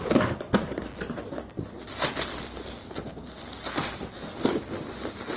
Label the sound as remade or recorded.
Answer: recorded